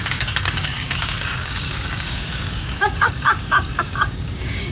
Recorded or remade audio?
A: remade